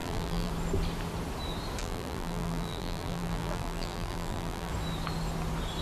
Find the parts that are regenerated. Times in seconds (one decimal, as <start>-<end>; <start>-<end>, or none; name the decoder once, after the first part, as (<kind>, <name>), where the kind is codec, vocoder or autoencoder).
0.0-0.5 (vocoder, BigVGAN v2); 1.8-4.7